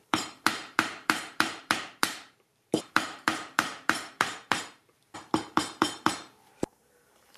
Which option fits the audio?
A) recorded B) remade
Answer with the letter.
B